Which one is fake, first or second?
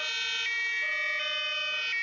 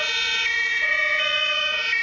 second